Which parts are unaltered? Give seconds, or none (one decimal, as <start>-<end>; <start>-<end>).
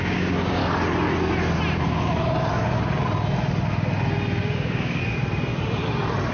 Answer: 0.6-4.4; 5.0-6.3